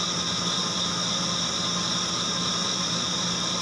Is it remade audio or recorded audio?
recorded